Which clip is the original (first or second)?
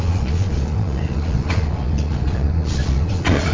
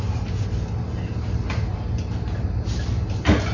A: second